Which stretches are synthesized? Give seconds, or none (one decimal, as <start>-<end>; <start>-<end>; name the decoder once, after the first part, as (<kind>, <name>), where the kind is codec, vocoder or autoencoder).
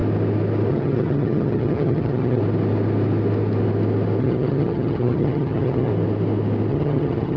0.7-2.4 (vocoder, HiFi-GAN); 4.2-5.9; 6.7-7.4